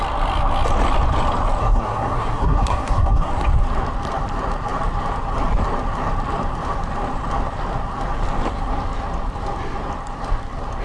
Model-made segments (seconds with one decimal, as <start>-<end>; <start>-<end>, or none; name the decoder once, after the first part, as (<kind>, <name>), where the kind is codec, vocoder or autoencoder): 1.6-3.3 (codec, SNAC)